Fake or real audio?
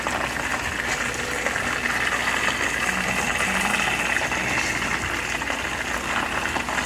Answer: real